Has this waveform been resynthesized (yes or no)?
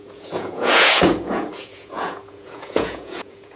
yes